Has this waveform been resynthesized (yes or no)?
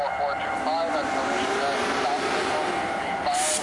no